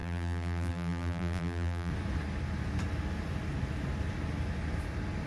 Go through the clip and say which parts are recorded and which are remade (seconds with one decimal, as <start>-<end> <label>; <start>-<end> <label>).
0.0-1.9 remade; 1.9-5.3 recorded